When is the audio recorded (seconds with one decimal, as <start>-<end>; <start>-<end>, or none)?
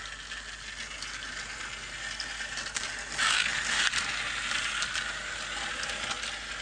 0.0-3.5; 4.0-6.6